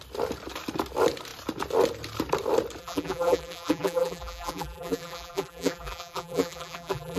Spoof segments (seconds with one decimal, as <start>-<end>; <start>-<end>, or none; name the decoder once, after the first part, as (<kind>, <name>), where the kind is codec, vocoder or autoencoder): 2.8-7.2 (vocoder, BigVGAN v2)